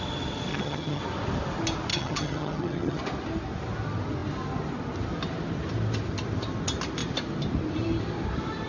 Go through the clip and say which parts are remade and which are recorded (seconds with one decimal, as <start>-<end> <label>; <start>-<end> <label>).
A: 0.0-0.5 recorded; 0.5-1.0 remade; 1.0-1.9 recorded; 1.9-3.0 remade; 3.0-8.7 recorded